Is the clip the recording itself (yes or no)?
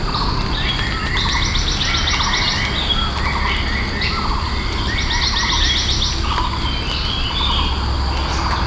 yes